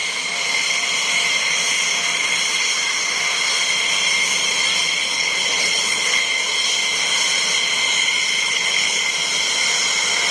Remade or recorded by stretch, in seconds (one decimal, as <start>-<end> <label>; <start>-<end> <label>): 0.0-5.0 recorded; 5.0-6.2 remade; 6.2-8.4 recorded; 8.4-9.0 remade; 9.0-10.3 recorded